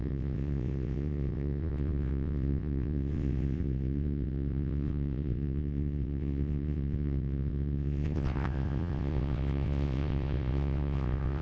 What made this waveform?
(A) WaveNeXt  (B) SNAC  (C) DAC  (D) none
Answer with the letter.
A